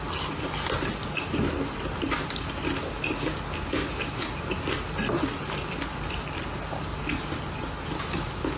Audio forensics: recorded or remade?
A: recorded